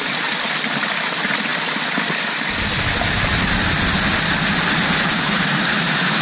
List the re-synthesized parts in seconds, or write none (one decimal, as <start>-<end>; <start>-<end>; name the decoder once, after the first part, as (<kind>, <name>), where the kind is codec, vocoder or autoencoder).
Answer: none